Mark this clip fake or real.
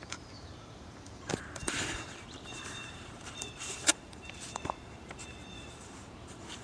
fake